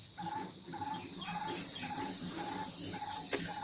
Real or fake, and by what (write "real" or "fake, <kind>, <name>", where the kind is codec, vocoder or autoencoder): real